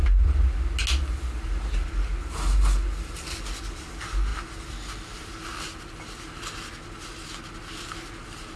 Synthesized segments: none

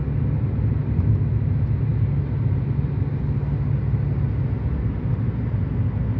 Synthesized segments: none

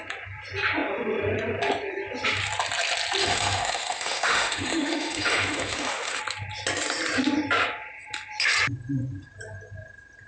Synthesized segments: 3.2-6.2 (autoencoder, DAC-VAE)

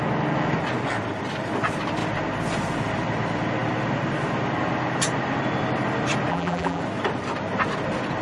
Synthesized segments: 6.3-6.8 (vocoder, BigVGAN v2)